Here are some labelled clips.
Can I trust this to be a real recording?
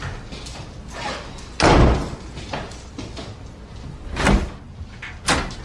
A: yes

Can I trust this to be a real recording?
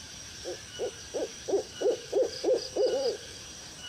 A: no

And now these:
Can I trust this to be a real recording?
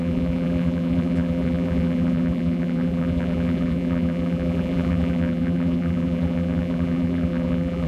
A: no